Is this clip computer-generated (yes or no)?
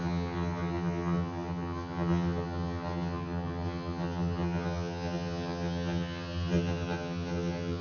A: yes